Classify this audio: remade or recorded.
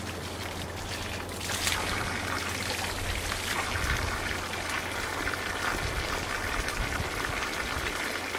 recorded